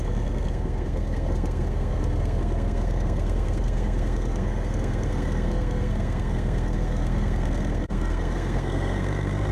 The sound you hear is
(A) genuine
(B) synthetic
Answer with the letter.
B